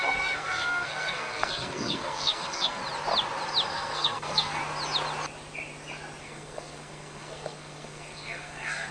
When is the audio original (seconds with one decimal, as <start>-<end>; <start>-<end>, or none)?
2.8-3.7; 4.6-6.2